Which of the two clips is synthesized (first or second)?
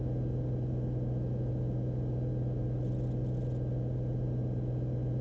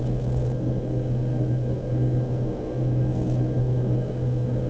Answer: second